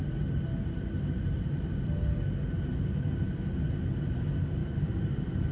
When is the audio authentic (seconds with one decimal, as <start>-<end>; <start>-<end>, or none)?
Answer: 0.0-5.5